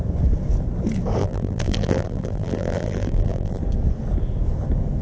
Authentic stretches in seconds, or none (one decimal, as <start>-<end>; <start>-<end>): 0.0-1.2; 3.6-5.0